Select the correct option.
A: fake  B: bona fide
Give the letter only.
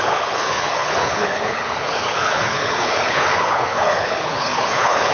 A